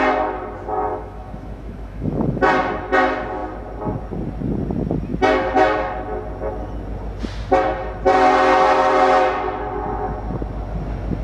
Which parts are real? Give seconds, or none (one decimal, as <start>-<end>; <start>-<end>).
0.0-0.9; 2.4-11.2